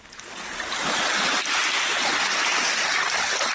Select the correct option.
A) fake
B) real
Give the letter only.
B